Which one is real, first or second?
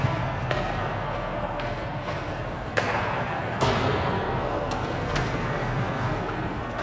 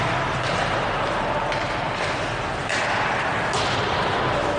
second